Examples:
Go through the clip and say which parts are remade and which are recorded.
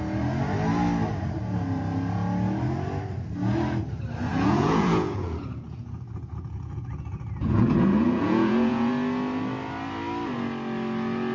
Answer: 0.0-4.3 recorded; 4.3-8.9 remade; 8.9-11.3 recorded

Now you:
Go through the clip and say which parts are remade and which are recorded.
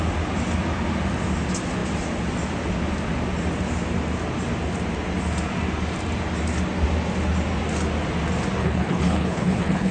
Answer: 0.0-8.6 recorded; 8.6-9.9 remade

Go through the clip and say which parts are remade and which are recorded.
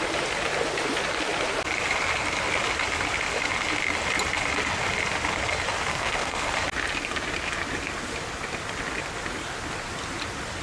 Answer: 0.0-5.9 recorded; 5.9-6.5 remade; 6.5-10.6 recorded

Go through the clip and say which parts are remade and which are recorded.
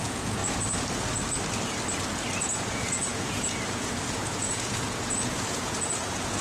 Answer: 0.0-0.4 remade; 0.4-2.4 recorded; 2.4-6.4 remade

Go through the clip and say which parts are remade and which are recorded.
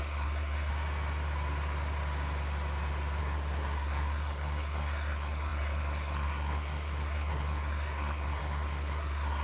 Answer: 0.0-0.7 remade; 0.7-3.2 recorded; 3.2-9.4 remade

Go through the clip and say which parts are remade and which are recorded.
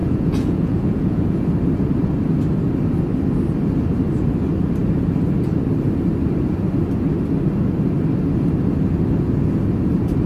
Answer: 0.0-1.5 remade; 1.5-10.3 recorded